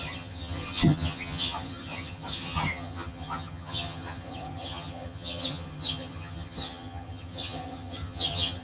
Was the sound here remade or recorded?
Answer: remade